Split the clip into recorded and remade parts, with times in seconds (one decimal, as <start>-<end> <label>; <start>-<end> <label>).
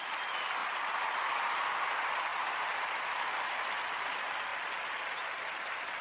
0.0-0.6 recorded; 0.6-1.7 remade; 1.7-2.3 recorded; 2.3-3.7 remade; 3.7-6.0 recorded